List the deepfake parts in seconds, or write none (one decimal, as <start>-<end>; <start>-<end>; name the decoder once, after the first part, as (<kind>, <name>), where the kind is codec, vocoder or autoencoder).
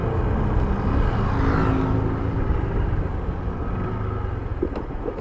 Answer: none